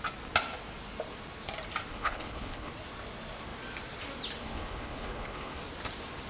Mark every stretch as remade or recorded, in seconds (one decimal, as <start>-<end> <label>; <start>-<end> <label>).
0.0-1.9 recorded; 1.9-2.7 remade; 2.7-4.4 recorded; 4.4-5.6 remade; 5.6-6.3 recorded